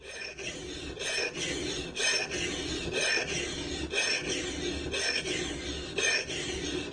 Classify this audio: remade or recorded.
recorded